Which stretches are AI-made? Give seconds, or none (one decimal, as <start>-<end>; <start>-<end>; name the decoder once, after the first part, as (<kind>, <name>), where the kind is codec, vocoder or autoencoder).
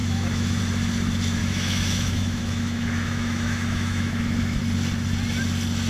0.0-0.6 (autoencoder, DAC-VAE); 1.4-4.6